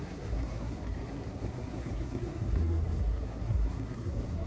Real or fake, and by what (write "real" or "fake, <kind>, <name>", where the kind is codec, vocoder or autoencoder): fake, codec, SNAC